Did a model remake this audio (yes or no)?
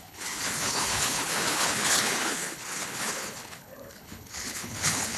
yes